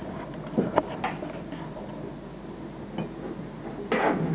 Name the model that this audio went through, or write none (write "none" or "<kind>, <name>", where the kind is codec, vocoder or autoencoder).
none